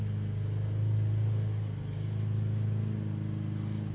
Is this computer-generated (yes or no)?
no